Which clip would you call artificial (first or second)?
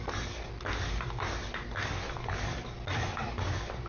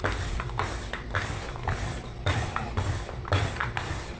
second